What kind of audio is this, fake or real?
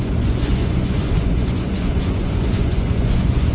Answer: fake